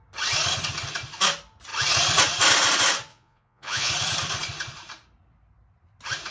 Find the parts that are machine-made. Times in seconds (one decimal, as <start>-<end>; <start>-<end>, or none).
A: 3.1-3.9

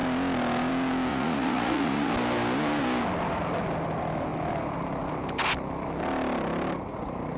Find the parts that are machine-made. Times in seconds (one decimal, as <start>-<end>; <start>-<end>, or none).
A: 1.1-2.1

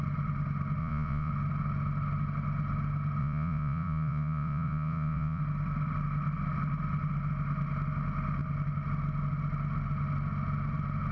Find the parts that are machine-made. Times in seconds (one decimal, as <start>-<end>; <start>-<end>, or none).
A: 0.8-1.3; 3.2-5.4

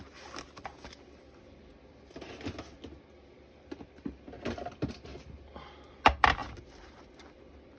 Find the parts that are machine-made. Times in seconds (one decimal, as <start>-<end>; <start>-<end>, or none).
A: none

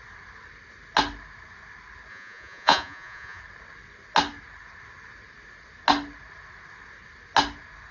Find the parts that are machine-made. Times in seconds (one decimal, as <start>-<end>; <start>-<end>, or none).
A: 2.1-3.4

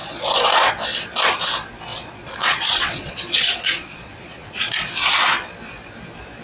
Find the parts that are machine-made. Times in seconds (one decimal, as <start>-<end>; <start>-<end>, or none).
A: 0.0-0.7; 1.9-4.9

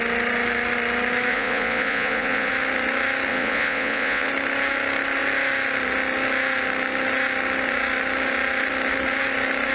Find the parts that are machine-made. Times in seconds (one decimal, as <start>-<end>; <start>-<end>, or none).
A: 1.3-2.5; 3.3-4.3